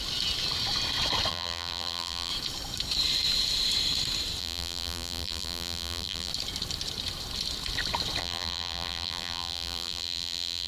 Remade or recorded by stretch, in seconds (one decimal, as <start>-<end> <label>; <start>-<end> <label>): 0.0-1.3 recorded; 1.3-2.3 remade; 2.3-4.4 recorded; 4.4-6.3 remade; 6.3-8.2 recorded; 8.2-10.7 remade